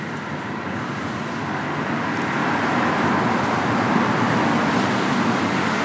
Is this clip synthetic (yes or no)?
no